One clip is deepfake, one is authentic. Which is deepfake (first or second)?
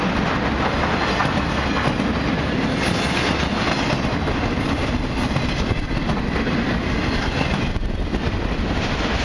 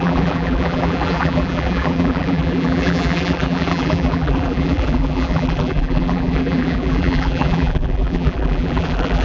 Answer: second